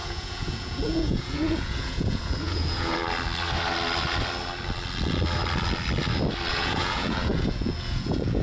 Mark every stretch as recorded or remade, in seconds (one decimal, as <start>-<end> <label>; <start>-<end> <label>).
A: 0.0-3.0 remade; 3.0-6.5 recorded; 6.5-8.4 remade